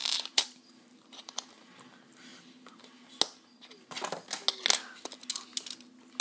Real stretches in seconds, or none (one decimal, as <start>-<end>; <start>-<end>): 1.5-2.3; 3.0-6.2